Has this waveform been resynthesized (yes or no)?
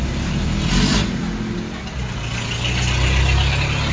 no